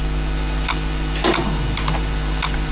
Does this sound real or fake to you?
real